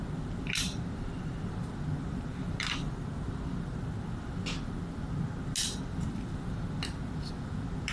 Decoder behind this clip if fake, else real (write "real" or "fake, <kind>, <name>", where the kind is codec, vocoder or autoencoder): real